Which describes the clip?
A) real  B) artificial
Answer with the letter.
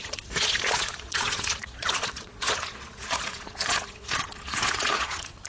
B